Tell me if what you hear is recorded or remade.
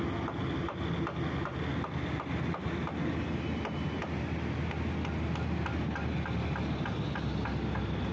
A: recorded